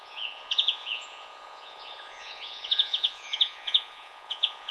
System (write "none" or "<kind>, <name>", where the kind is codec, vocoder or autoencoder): vocoder, Vocos